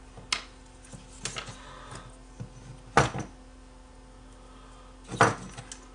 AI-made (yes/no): no